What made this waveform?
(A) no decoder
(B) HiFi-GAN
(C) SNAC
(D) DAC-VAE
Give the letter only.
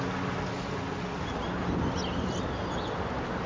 A